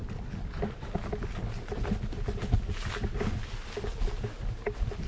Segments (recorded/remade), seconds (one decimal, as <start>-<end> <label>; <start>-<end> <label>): 0.0-5.1 recorded